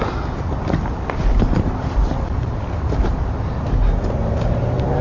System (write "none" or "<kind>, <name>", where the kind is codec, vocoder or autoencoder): none